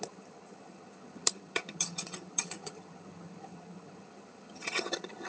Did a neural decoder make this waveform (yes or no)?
yes